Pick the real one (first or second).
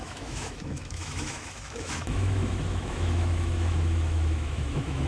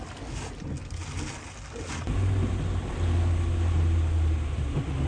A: second